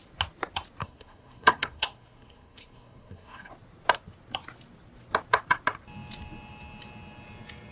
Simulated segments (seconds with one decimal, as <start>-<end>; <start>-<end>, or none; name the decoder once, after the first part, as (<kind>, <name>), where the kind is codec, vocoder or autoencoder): 0.8-3.5 (codec, SNAC)